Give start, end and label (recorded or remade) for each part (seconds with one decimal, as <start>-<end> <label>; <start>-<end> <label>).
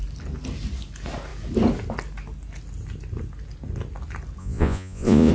0.0-4.4 recorded; 4.4-5.3 remade